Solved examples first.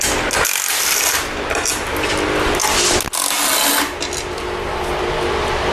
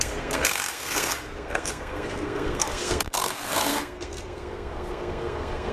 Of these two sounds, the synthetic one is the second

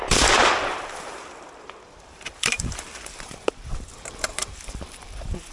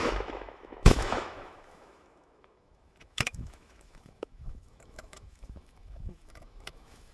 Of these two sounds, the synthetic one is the second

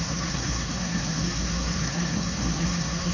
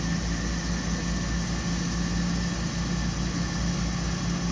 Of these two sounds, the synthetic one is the first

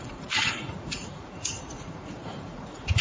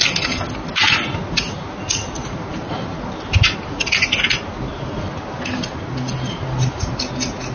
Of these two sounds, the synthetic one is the first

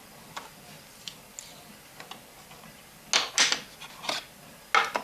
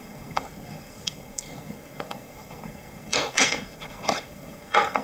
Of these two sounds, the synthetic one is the second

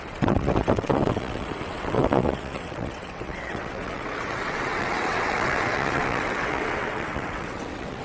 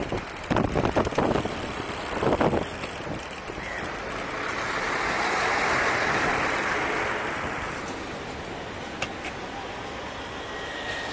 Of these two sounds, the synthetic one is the first